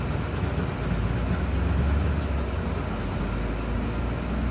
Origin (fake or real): real